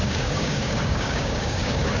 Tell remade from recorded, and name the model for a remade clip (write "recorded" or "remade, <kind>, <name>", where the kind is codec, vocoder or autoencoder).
remade, codec, DAC